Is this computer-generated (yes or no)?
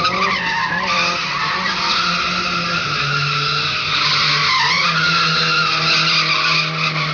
no